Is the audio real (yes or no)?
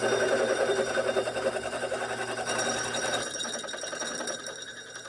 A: yes